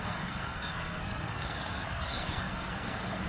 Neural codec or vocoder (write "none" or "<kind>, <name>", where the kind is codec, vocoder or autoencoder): codec, SNAC